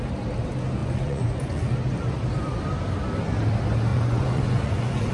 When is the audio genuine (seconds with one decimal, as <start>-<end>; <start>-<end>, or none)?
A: 0.0-0.8; 1.7-3.9